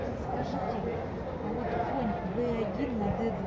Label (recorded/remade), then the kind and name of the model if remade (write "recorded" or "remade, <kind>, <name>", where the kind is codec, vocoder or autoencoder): recorded